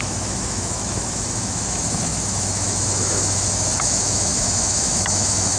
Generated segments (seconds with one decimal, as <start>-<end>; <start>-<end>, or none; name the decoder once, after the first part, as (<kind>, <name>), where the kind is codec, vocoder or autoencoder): 0.0-5.6 (autoencoder, DAC-VAE)